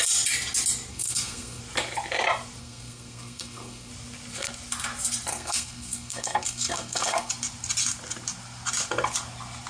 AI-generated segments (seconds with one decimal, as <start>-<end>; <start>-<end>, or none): 0.9-1.6; 2.6-3.9; 5.3-7.3